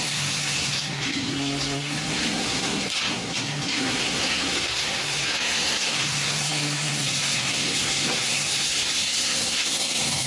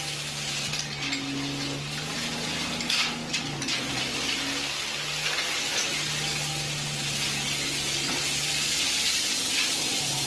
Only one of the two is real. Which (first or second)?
second